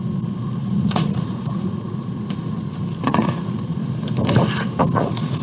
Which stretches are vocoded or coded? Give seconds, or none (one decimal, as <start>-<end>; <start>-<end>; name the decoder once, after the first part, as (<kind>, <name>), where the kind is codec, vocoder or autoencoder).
0.6-3.8 (vocoder, Vocos); 4.8-5.4